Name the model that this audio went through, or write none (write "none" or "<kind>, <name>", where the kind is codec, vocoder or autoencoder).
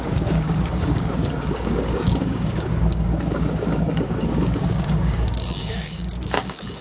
codec, DAC